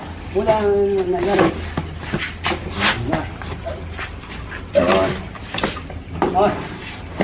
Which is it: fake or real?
real